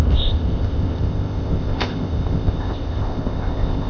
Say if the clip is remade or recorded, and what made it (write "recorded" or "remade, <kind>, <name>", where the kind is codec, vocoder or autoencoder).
remade, codec, ZipCodec